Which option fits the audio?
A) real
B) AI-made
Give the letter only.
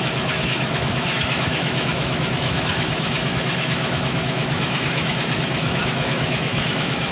B